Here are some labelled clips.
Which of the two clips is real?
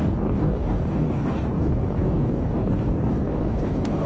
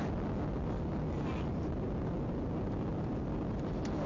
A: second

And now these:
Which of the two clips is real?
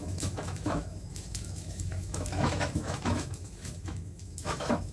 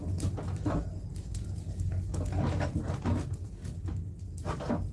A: second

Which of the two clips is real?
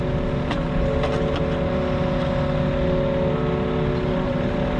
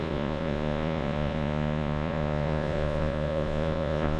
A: first